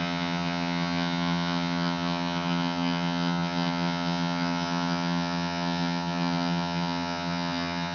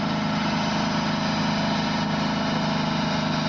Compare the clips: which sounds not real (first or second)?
first